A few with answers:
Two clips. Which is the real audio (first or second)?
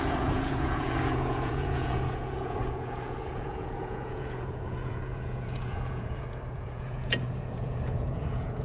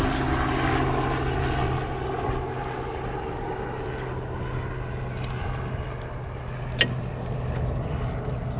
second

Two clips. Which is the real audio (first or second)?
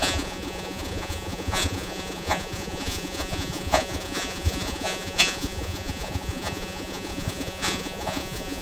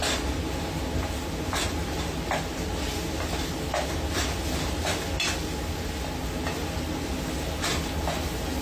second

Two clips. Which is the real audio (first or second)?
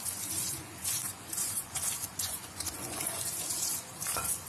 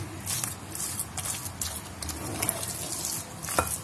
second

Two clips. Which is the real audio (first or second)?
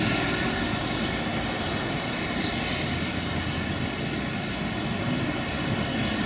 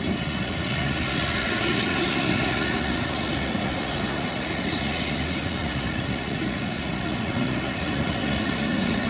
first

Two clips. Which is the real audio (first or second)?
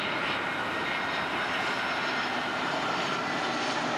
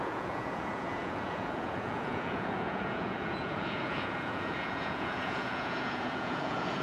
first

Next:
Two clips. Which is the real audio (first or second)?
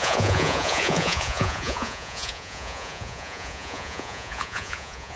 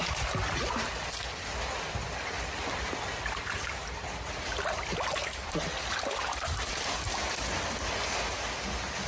second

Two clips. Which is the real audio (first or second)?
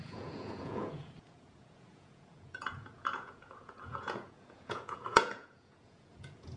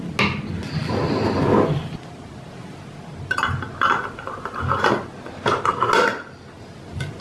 second